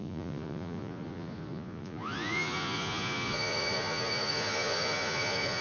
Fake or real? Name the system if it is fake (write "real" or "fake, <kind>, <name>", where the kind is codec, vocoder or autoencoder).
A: fake, vocoder, Vocos